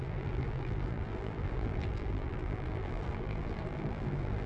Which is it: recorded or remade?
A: remade